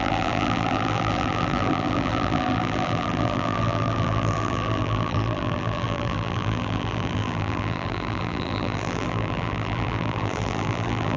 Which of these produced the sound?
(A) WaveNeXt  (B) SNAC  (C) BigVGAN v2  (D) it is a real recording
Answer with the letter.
C